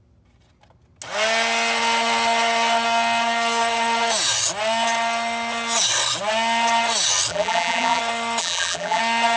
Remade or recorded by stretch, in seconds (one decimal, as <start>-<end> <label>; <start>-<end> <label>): 0.0-7.3 recorded; 7.3-8.0 remade; 8.0-8.4 recorded; 8.4-9.0 remade; 9.0-9.4 recorded